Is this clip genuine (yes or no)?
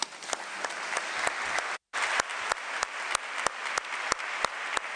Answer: no